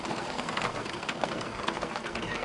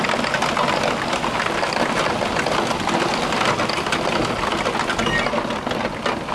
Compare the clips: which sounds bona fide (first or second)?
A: second